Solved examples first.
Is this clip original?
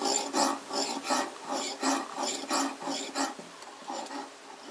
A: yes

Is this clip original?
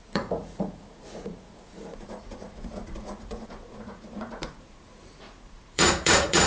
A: no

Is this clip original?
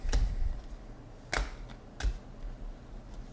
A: yes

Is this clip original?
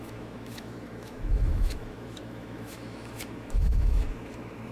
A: no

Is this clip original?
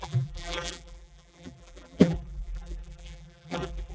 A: no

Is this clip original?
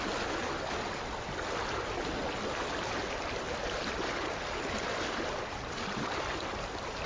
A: yes